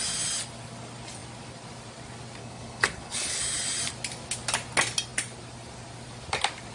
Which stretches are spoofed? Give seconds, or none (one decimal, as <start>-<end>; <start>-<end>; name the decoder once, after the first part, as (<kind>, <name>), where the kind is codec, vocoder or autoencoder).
2.4-3.4 (codec, HILCodec)